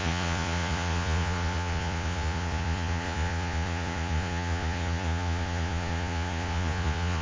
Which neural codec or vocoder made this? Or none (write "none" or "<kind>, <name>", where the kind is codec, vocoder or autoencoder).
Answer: vocoder, Vocos